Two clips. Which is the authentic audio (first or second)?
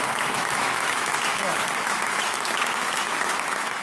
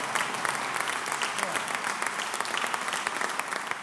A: second